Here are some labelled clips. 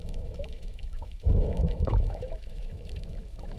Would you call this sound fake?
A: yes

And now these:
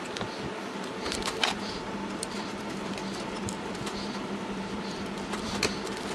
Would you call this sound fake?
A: yes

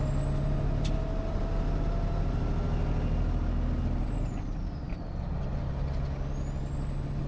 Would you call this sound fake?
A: no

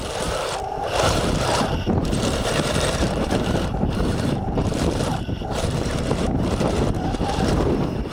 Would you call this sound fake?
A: yes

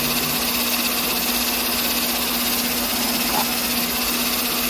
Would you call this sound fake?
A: no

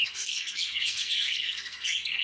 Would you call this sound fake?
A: yes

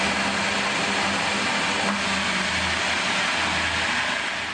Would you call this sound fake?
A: no